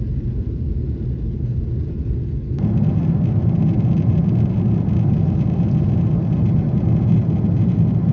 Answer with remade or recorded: recorded